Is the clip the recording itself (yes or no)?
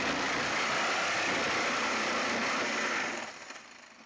yes